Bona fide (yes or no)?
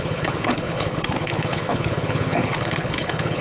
no